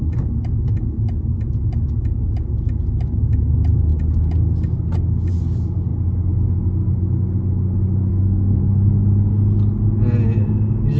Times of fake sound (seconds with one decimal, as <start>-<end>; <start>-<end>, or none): 8.1-8.6